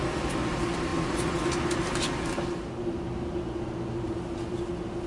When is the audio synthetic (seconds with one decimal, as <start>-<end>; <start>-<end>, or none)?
none